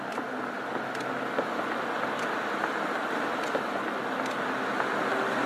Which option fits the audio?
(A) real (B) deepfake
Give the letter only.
A